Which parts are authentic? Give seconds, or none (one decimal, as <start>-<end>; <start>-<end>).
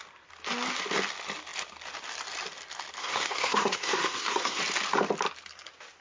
0.0-3.0; 4.6-6.0